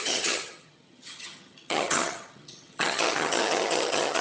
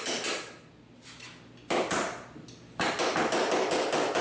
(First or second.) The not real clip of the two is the first